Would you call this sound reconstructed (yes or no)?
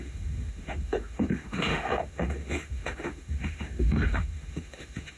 yes